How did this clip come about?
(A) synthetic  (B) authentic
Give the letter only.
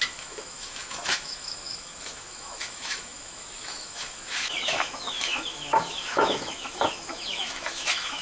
A